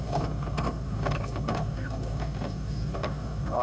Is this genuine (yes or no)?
no